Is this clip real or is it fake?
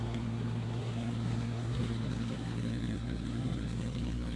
fake